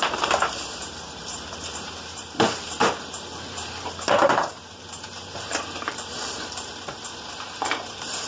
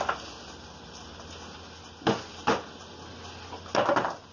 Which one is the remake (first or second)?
first